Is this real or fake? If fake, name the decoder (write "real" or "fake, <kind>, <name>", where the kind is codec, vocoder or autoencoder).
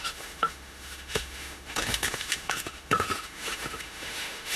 fake, autoencoder, DAC-VAE